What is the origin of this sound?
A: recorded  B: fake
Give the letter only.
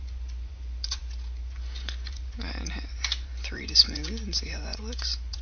B